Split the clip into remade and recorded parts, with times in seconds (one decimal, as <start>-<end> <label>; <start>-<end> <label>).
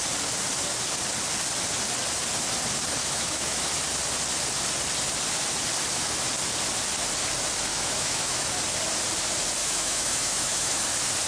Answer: 0.0-3.0 recorded; 3.0-3.7 remade; 3.7-7.7 recorded; 7.7-8.5 remade; 8.5-9.6 recorded; 9.6-10.8 remade; 10.8-11.3 recorded